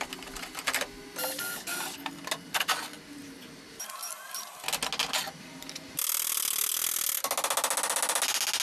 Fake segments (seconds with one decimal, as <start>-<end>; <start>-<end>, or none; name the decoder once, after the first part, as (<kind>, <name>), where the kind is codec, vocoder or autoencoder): none